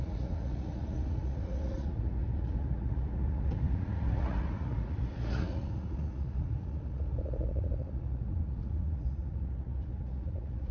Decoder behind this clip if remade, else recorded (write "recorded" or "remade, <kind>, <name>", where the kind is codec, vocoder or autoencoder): remade, vocoder, Vocos